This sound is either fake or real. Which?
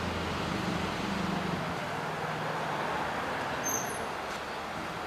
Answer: real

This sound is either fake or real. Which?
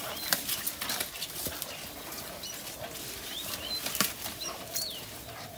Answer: fake